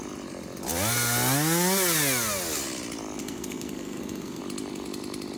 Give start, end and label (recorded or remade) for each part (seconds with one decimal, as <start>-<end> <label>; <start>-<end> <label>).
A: 0.0-3.2 recorded; 3.2-4.4 remade; 4.4-5.4 recorded